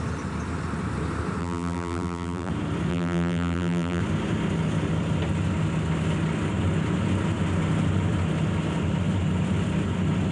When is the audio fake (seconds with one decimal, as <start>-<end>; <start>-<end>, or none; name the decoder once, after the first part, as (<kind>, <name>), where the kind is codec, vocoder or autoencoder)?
1.4-2.5 (vocoder, BigVGAN v2); 2.9-4.0